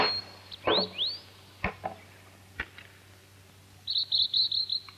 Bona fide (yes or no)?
yes